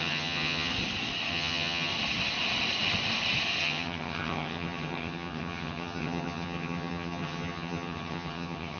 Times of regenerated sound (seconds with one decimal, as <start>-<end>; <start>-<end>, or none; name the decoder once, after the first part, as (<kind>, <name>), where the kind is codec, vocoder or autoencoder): 0.0-0.7 (vocoder, HiFi-GAN); 1.3-1.9; 3.6-8.8